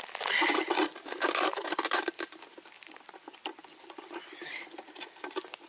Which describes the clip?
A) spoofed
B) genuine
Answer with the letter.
B